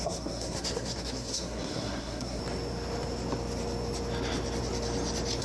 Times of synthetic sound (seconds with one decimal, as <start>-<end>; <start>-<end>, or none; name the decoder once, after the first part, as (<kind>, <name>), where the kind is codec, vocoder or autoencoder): 0.0-2.4 (codec, SNAC)